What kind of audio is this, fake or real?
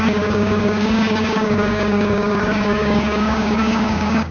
fake